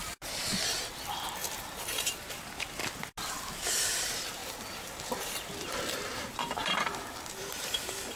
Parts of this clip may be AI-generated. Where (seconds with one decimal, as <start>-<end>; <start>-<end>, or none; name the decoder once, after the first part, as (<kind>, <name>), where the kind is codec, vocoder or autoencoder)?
0.0-2.8 (vocoder, BigVGAN v2); 3.7-8.2